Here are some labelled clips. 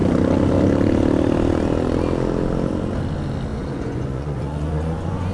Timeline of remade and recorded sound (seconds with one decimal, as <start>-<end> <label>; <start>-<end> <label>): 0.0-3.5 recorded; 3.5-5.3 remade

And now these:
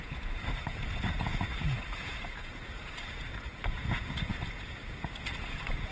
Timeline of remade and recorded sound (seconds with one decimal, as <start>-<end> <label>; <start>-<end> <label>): 0.0-5.9 remade

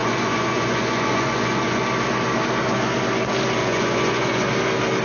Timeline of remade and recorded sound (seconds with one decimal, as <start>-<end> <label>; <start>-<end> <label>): 0.0-1.8 remade; 1.8-3.6 recorded; 3.6-4.5 remade; 4.5-5.0 recorded